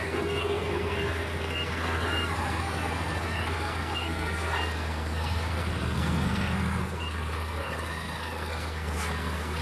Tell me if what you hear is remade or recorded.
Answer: remade